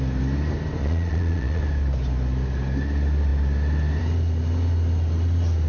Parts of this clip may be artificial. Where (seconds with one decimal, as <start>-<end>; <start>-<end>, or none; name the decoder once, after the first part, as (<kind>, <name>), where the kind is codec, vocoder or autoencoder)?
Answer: 0.8-1.6 (vocoder, Vocos)